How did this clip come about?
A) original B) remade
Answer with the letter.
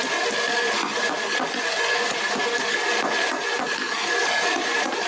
A